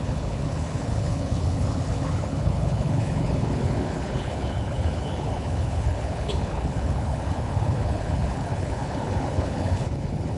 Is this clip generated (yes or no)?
yes